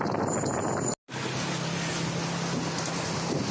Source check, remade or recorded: recorded